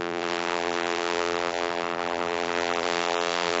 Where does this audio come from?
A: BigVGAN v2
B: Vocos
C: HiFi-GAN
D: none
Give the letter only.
A